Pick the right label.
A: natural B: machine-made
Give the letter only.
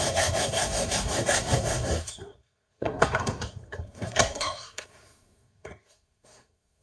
B